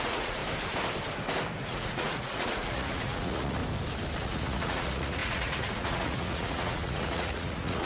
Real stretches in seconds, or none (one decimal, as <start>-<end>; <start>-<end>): 0.4-1.6; 3.6-4.2